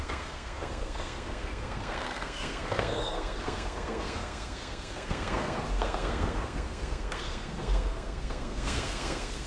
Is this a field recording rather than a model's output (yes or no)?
no